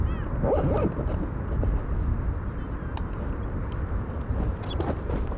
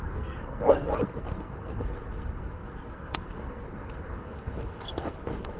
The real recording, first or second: first